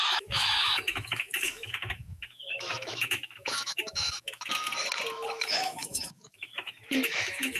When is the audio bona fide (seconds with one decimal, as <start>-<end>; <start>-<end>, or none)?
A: 4.7-5.4